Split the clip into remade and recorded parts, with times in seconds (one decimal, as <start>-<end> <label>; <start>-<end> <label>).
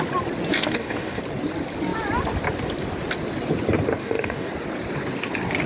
0.0-0.5 recorded; 0.5-1.2 remade; 1.2-4.0 recorded; 4.0-4.5 remade; 4.5-5.7 recorded